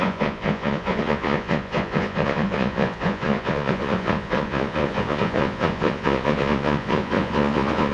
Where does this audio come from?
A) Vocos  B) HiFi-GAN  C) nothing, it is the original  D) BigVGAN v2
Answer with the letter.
A